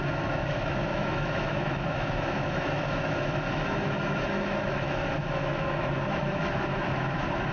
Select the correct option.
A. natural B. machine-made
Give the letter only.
B